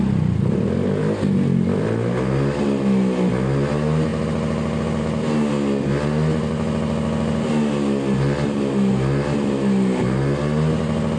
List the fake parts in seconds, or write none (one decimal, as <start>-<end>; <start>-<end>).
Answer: none